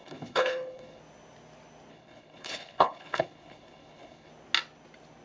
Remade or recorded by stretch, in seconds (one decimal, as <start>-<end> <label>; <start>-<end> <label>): 0.0-1.0 remade; 1.0-1.9 recorded; 1.9-4.3 remade; 4.3-5.2 recorded